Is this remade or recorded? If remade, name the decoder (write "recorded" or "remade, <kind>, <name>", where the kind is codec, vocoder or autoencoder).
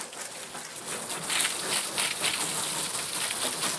recorded